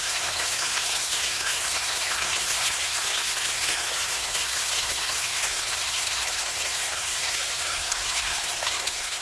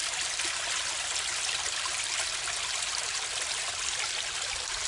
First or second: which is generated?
first